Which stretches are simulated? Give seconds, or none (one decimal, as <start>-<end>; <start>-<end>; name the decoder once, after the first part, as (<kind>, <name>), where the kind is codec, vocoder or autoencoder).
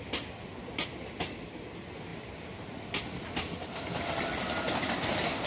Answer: none